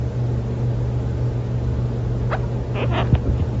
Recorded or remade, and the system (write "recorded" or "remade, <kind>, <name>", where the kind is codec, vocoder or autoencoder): recorded